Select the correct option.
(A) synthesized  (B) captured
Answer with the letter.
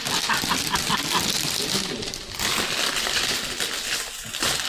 B